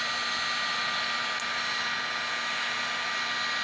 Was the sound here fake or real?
real